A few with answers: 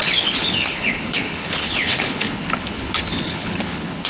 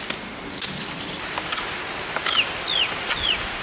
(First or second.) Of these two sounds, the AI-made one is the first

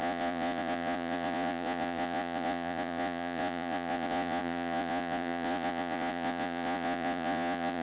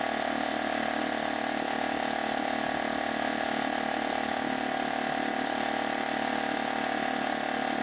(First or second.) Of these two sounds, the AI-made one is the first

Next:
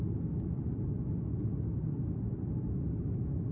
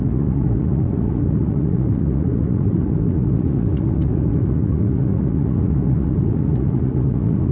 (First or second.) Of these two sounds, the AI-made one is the second